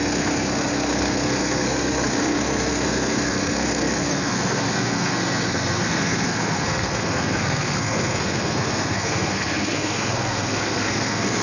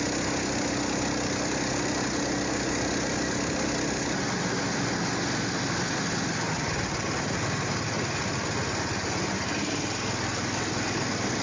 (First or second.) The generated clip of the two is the first